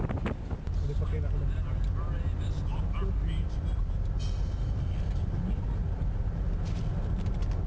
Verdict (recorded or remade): recorded